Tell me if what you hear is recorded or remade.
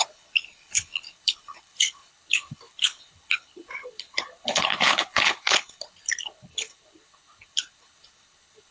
remade